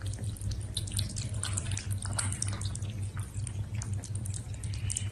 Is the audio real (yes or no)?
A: no